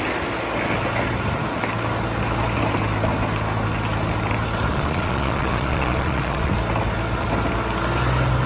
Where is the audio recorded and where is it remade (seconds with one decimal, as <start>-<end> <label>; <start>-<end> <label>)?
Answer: 0.0-4.7 recorded; 4.7-6.5 remade; 6.5-8.5 recorded